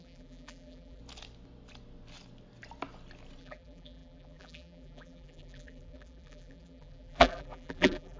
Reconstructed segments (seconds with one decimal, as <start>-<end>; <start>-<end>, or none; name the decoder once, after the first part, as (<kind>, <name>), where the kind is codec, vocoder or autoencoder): 0.0-1.0 (vocoder, BigVGAN v2); 3.4-8.2